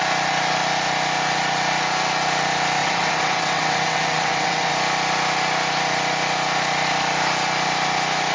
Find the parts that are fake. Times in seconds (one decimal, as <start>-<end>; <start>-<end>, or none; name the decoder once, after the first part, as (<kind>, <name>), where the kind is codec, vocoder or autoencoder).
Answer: 2.8-4.7 (vocoder, WaveNeXt)